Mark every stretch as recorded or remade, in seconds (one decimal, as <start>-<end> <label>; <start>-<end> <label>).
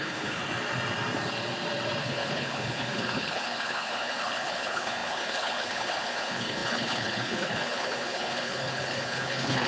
0.0-0.4 remade; 0.4-2.0 recorded; 2.0-9.7 remade